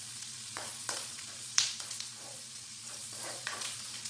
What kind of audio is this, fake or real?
fake